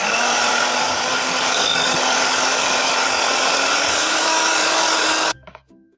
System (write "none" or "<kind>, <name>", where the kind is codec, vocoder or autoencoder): codec, DAC